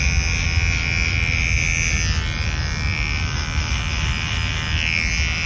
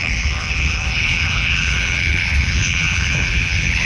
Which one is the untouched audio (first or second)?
first